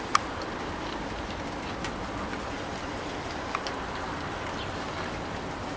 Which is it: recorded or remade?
recorded